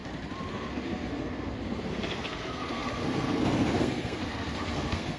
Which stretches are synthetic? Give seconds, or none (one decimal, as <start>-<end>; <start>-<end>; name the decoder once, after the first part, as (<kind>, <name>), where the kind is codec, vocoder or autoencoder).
0.5-5.2 (codec, SNAC)